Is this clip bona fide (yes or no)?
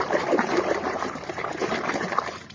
no